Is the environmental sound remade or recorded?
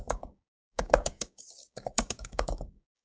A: remade